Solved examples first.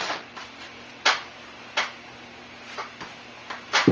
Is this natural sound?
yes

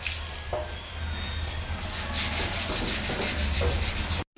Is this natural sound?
yes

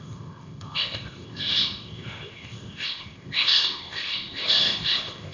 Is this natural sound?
no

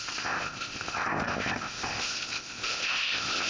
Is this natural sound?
no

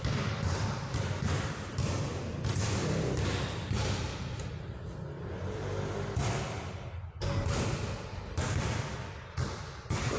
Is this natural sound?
yes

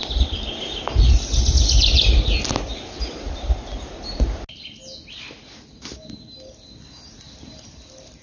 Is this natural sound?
yes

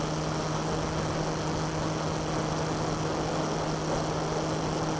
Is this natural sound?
yes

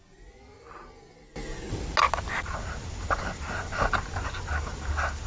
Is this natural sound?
yes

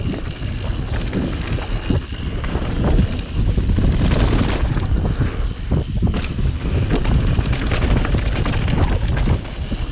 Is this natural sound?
yes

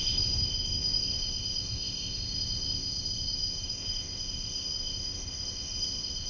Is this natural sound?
no